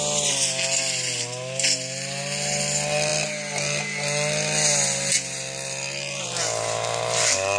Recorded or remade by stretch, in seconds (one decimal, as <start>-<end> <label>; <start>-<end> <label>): 0.0-7.6 recorded